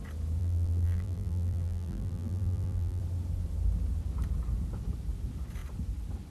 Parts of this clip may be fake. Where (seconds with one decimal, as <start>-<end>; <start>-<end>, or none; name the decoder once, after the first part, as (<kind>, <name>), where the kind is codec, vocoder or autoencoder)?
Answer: 0.4-3.0 (vocoder, BigVGAN v2)